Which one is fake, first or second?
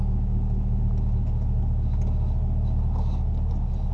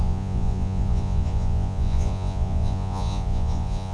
second